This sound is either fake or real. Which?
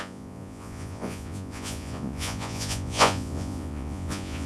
fake